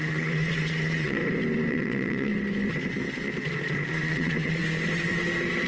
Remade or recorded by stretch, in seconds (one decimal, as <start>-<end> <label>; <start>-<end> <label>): 0.0-1.2 remade; 1.2-1.7 recorded; 1.7-2.3 remade; 2.3-3.9 recorded; 3.9-4.6 remade; 4.6-5.7 recorded